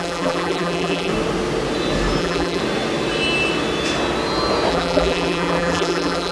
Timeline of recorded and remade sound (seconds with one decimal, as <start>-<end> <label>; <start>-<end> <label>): 0.0-1.1 remade; 1.1-2.2 recorded; 2.2-2.6 remade; 2.6-4.7 recorded; 4.7-6.3 remade